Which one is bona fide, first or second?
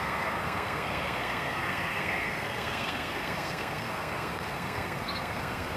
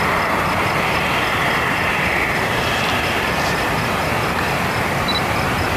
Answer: second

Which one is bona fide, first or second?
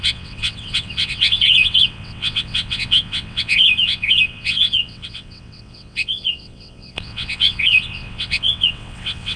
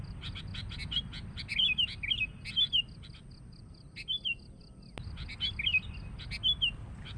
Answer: second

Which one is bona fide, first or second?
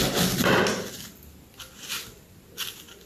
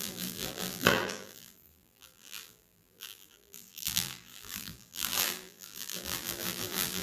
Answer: first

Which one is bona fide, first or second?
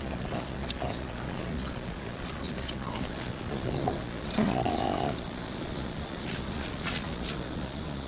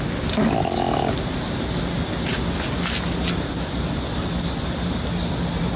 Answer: second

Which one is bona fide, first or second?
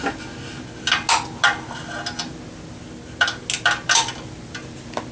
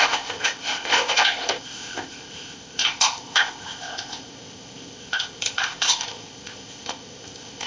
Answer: first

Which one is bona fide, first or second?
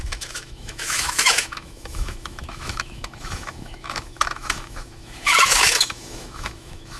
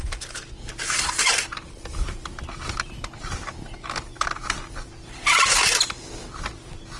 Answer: second